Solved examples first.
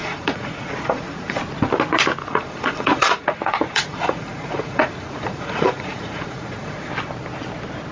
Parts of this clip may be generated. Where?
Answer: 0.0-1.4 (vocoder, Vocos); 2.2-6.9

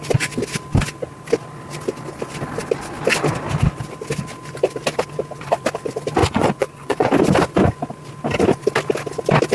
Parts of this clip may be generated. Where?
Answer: 6.2-7.1 (vocoder, Vocos)